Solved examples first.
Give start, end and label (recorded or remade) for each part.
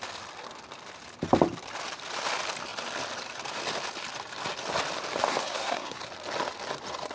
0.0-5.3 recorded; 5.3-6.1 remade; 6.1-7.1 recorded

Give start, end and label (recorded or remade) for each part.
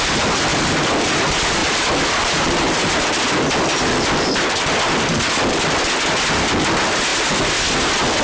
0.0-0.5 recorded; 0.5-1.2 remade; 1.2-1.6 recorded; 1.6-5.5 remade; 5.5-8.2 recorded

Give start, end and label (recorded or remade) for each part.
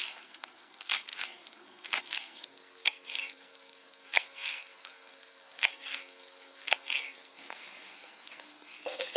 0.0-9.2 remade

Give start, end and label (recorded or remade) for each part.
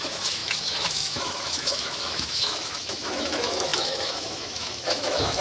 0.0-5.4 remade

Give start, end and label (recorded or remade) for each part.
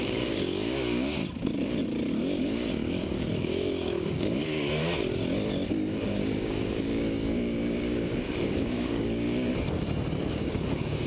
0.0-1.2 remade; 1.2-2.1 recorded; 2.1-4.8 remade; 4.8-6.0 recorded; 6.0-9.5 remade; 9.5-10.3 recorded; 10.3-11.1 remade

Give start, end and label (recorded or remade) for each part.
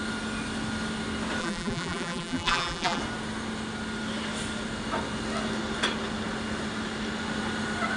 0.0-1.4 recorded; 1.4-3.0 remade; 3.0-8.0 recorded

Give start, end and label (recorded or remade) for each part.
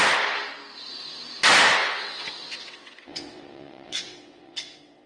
0.0-1.8 recorded; 1.8-5.1 remade